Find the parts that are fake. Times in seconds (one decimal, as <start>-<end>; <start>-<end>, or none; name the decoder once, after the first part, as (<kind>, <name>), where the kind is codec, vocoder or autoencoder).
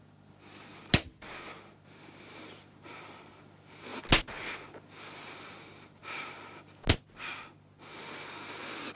none